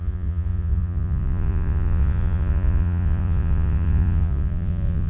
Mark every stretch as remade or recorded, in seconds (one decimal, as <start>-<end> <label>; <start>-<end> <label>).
0.0-5.1 remade